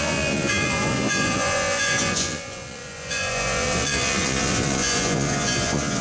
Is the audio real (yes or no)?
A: no